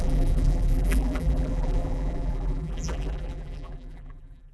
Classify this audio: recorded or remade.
remade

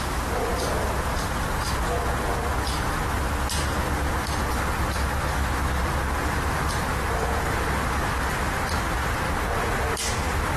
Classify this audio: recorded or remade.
recorded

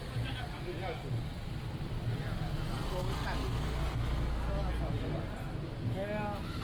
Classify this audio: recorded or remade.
recorded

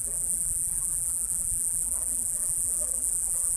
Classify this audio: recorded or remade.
remade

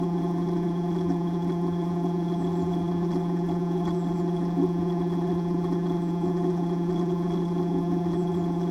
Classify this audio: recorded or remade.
remade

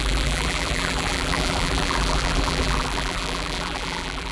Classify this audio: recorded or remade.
remade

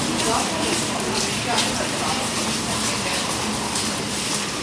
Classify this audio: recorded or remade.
recorded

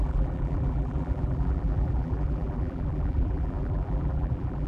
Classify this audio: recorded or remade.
remade